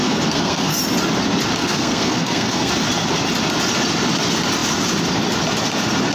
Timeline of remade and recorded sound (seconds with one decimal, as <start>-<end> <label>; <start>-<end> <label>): 0.0-0.8 remade; 0.8-1.6 recorded; 1.6-2.7 remade; 2.7-6.1 recorded